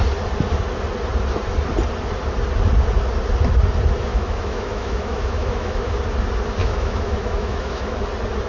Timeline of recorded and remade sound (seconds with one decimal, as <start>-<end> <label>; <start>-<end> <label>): 0.0-4.1 recorded; 4.1-6.0 remade; 6.0-6.6 recorded; 6.6-8.0 remade; 8.0-8.5 recorded